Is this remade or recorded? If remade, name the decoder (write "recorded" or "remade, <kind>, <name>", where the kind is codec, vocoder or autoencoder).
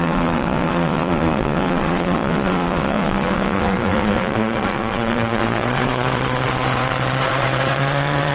remade, vocoder, Vocos